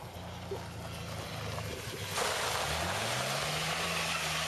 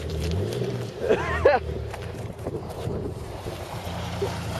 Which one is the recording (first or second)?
first